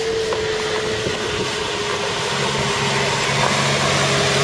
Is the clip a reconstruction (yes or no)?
no